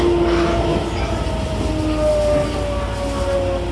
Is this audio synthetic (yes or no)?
no